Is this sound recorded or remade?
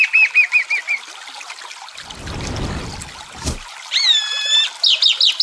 recorded